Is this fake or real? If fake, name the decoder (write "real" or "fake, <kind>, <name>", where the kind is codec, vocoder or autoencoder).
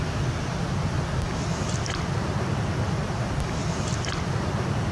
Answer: real